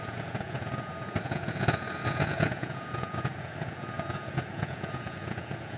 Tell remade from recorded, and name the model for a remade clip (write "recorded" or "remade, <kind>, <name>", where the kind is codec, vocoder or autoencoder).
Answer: remade, vocoder, Vocos